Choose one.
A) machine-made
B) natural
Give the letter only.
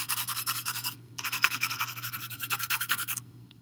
A